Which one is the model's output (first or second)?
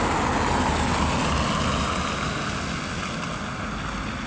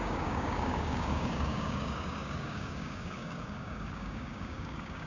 second